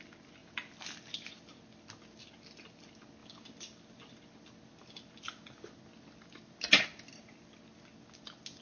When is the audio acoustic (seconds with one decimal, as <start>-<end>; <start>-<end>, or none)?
0.0-8.6